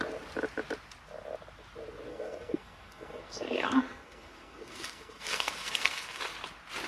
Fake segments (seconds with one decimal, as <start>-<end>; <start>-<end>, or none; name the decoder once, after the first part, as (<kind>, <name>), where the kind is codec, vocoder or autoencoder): 2.1-6.2 (codec, SNAC)